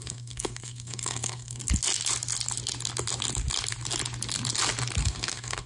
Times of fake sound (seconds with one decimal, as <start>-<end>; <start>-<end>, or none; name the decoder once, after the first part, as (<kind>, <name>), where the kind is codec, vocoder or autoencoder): 0.0-1.6 (codec, SNAC); 5.0-5.7